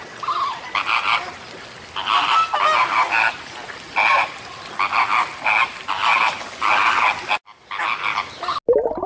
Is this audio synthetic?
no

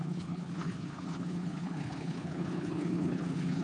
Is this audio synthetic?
yes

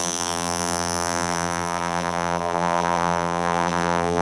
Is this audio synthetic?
yes